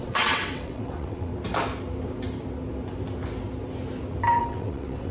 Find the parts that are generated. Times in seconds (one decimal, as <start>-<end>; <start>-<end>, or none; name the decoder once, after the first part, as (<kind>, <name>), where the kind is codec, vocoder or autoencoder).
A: 0.0-1.3 (vocoder, WaveNeXt); 4.4-5.1